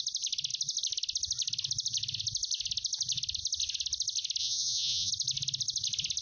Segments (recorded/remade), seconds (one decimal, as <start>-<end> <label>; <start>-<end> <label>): 0.0-4.4 recorded; 4.4-5.1 remade; 5.1-6.2 recorded